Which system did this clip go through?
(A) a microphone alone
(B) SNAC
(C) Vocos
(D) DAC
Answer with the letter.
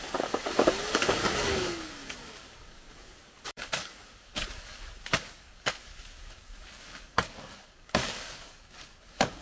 D